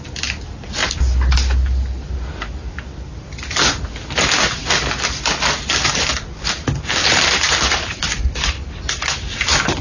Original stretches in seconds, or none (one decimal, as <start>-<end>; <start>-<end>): 0.0-7.0; 8.7-9.8